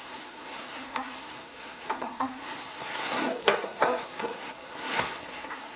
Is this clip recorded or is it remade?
remade